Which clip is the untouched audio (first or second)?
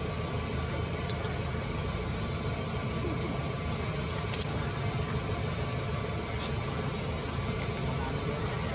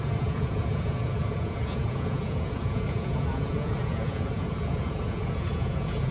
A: first